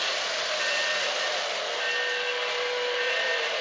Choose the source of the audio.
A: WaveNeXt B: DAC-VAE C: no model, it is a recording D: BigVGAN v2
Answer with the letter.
C